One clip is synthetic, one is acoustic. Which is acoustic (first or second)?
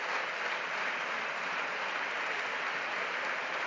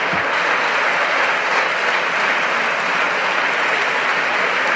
second